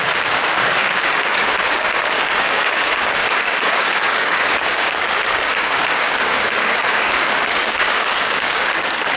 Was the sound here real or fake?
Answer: fake